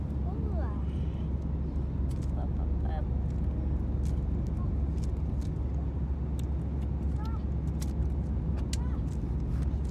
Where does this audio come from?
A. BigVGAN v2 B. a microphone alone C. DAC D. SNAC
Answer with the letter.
B